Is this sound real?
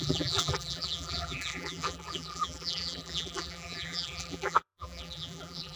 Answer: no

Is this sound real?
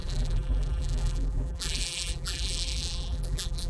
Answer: no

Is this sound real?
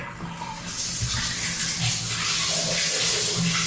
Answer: yes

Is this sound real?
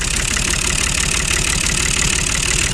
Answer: yes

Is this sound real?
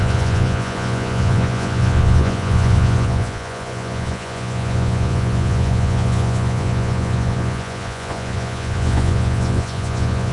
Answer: no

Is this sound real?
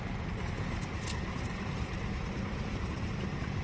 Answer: yes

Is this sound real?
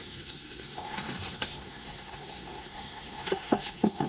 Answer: no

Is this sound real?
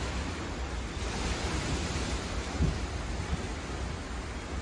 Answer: yes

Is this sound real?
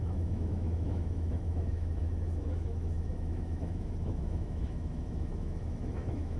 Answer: no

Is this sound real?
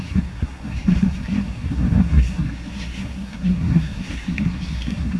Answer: no